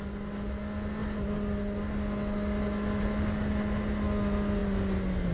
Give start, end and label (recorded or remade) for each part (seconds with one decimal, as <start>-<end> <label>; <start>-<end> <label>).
0.0-5.3 recorded